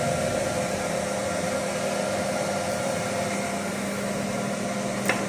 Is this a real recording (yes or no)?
no